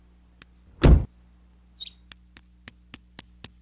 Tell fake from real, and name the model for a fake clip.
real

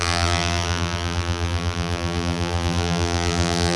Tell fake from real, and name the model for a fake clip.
fake, vocoder, BigVGAN v2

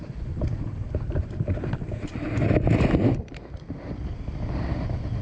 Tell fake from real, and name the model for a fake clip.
real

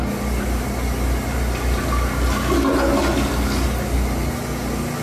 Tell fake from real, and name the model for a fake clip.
real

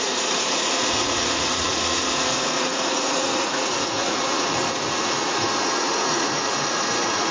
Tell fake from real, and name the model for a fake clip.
fake, vocoder, Vocos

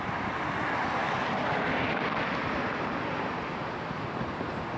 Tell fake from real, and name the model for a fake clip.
real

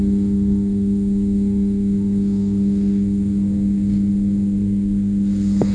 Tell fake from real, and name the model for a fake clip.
fake, codec, SNAC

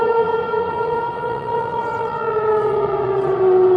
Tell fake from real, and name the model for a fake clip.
fake, vocoder, WaveNeXt